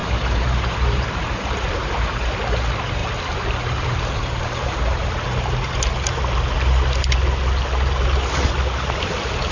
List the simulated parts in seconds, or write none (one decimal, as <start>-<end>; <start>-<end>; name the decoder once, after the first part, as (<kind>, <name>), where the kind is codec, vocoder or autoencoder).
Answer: 0.0-2.3 (vocoder, BigVGAN v2); 3.0-5.1